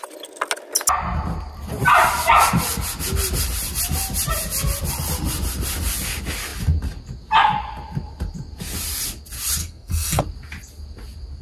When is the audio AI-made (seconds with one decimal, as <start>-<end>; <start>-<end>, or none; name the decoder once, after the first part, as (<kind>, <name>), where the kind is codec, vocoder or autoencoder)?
9.6-10.2 (codec, SNAC)